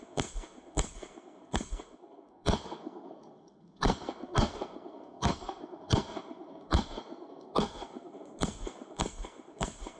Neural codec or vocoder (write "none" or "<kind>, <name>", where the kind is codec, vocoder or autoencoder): codec, SNAC